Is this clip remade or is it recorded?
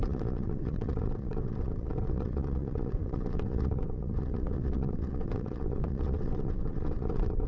remade